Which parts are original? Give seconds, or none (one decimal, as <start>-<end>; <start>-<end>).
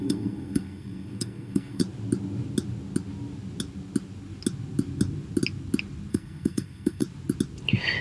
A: 1.8-6.1; 7.0-8.0